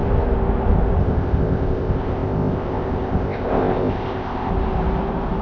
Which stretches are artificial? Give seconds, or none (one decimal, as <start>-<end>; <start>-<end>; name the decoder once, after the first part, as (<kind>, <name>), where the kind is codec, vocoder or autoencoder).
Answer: 1.0-4.5 (codec, ZipCodec)